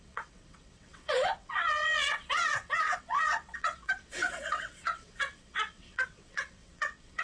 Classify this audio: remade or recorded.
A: remade